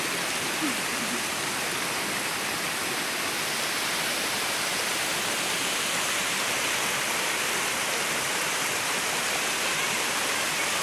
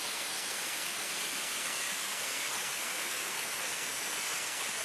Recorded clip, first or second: first